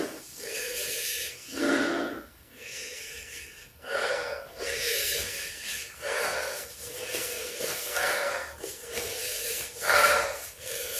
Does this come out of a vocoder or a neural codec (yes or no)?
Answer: yes